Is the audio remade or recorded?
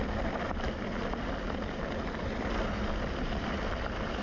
recorded